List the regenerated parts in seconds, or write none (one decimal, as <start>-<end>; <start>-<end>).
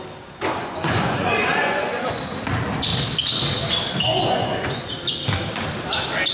0.6-2.2; 4.1-4.9